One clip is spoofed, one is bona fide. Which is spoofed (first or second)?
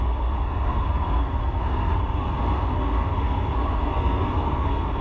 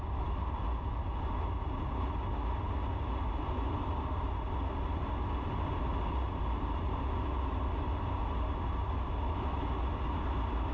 first